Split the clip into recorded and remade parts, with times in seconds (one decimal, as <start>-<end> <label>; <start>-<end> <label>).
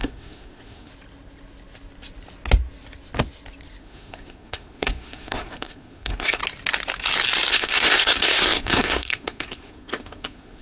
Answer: 0.0-0.9 remade; 0.9-3.8 recorded; 3.8-6.4 remade; 6.4-7.5 recorded; 7.5-10.6 remade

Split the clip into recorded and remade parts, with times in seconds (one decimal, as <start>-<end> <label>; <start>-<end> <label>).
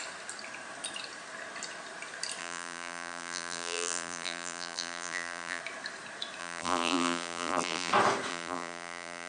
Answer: 0.0-2.4 recorded; 2.4-5.6 remade; 5.6-6.4 recorded; 6.4-7.9 remade; 7.9-8.3 recorded; 8.3-9.3 remade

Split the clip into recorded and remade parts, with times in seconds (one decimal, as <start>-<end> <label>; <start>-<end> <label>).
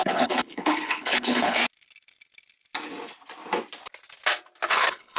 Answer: 0.0-1.6 remade; 1.6-4.7 recorded; 4.7-5.2 remade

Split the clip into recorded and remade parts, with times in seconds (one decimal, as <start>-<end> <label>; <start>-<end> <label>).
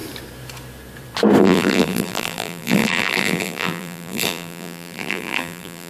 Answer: 0.0-1.4 recorded; 1.4-5.9 remade